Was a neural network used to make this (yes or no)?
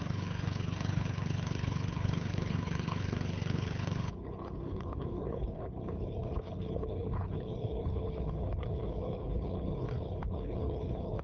yes